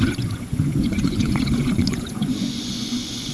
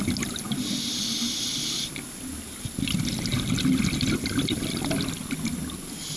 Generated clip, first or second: first